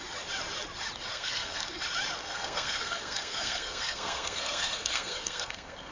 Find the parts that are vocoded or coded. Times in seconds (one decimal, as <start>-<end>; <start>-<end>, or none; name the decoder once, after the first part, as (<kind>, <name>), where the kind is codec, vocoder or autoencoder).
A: 1.1-1.7 (codec, SNAC); 2.2-5.9